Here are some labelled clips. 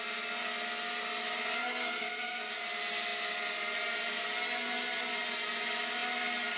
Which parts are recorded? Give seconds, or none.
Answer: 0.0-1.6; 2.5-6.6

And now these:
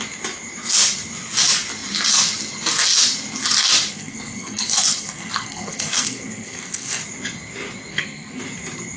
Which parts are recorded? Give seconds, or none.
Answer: 0.0-3.9; 7.0-7.9; 8.4-9.0

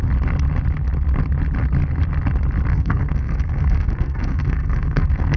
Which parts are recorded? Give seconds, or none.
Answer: 0.0-2.7

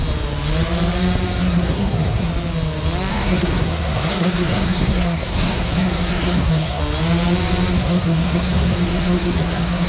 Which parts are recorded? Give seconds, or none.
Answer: 0.0-1.4; 2.3-3.1; 6.8-7.7